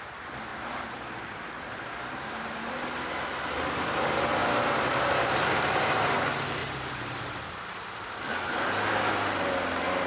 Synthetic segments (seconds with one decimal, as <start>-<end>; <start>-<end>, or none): 0.5-2.7; 4.4-6.0; 6.6-7.4